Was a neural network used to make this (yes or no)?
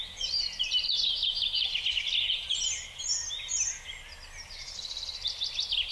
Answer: no